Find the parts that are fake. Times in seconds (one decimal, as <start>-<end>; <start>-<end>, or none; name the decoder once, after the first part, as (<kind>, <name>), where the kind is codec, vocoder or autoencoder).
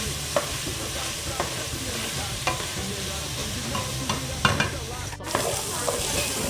0.0-0.7 (vocoder, BigVGAN v2); 1.4-3.4